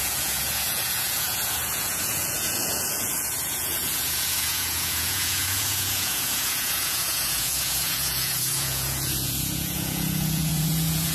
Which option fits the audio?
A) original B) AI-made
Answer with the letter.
B